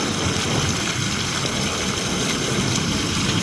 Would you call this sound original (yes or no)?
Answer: no